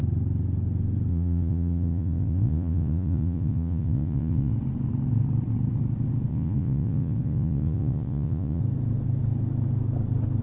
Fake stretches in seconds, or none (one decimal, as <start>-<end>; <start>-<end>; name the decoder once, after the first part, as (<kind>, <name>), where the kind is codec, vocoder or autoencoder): 1.1-4.5 (vocoder, Vocos); 6.3-8.6